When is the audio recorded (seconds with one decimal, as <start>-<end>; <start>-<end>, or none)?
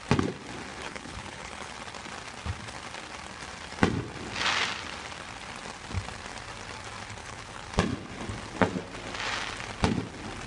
0.0-0.7; 1.7-7.2; 7.7-10.5